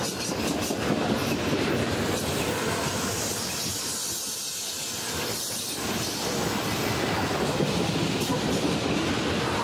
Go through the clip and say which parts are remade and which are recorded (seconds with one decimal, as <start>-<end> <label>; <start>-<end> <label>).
0.0-9.6 recorded

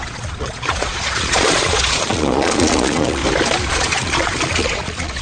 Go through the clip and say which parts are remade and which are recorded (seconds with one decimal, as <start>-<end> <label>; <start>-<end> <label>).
0.0-3.2 remade; 3.2-3.7 recorded; 3.7-5.2 remade

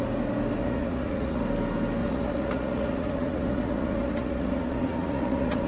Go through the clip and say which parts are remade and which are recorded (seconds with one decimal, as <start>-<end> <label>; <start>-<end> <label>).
0.0-0.6 recorded; 0.6-1.4 remade; 1.4-2.0 recorded; 2.0-5.7 remade

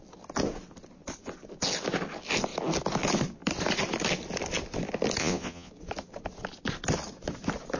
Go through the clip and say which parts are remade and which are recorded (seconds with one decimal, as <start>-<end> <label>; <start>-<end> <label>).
0.0-5.2 recorded; 5.2-5.7 remade; 5.7-7.8 recorded

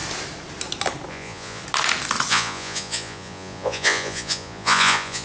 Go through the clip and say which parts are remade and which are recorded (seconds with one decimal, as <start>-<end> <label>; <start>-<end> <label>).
0.0-1.1 recorded; 1.1-1.6 remade; 1.6-2.3 recorded; 2.3-5.2 remade

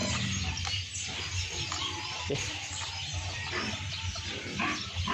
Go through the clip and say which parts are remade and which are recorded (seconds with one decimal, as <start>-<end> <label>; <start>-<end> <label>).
0.0-5.1 recorded

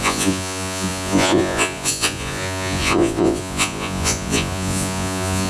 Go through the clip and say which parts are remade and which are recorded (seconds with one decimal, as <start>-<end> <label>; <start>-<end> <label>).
0.0-5.5 remade

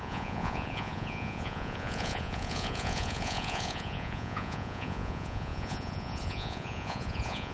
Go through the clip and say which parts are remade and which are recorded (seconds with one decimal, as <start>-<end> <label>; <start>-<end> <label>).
0.0-7.5 remade